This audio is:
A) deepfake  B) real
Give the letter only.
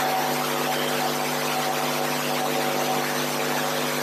B